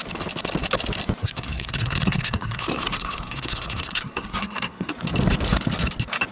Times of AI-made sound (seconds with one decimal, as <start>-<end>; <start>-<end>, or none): 1.2-4.9